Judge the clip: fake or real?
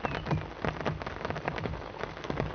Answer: real